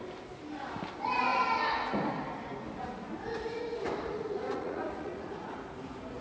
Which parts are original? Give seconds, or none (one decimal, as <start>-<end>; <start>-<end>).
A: 0.0-4.1; 5.5-6.2